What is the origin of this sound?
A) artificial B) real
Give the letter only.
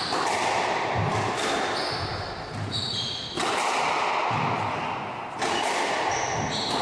B